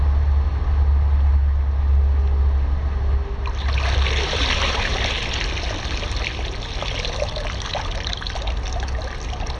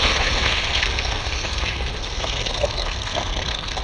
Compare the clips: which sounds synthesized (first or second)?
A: second